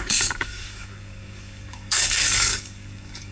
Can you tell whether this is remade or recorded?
remade